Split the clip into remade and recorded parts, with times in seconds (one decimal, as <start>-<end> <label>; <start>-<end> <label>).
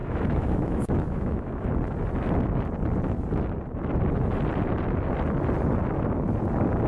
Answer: 0.0-1.7 remade; 1.7-6.9 recorded